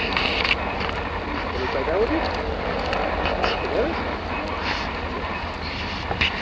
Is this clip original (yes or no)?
yes